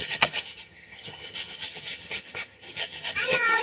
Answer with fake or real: fake